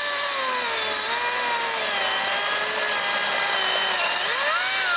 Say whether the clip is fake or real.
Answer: real